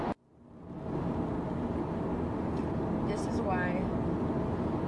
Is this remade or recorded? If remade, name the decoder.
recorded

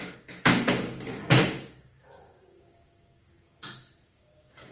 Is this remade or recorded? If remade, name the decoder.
remade, codec, DAC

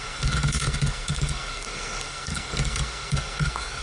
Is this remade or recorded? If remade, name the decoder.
remade, codec, SNAC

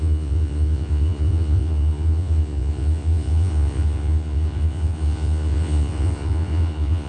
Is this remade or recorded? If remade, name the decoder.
remade, vocoder, Vocos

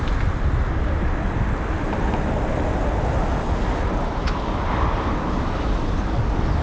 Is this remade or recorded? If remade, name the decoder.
recorded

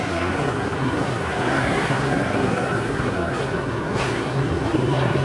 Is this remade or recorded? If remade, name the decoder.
remade, codec, SNAC